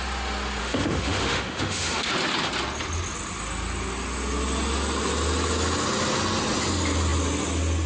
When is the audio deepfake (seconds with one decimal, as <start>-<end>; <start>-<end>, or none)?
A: 0.6-2.1